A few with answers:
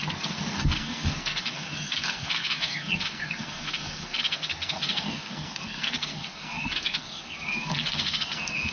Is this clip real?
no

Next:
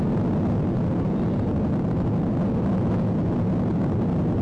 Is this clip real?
yes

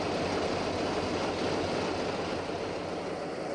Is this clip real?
yes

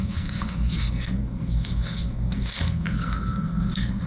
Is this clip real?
no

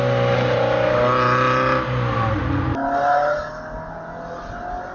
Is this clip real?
yes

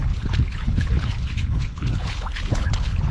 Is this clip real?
no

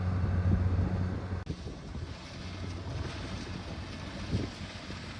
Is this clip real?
yes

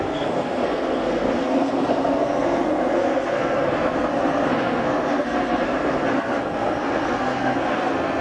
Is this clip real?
no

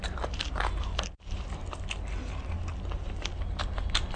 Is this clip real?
yes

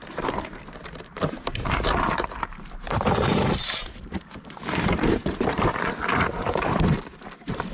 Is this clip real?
no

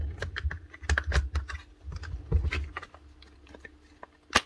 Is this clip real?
yes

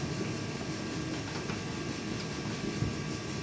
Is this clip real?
yes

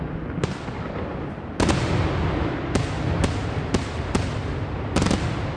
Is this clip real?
yes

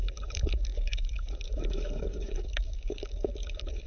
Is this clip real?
no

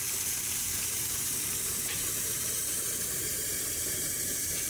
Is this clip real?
no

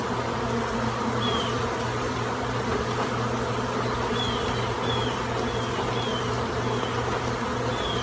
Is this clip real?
yes